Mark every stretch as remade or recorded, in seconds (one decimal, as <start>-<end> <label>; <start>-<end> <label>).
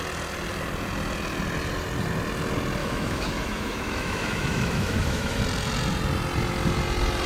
0.0-2.8 recorded; 2.8-5.4 remade; 5.4-7.3 recorded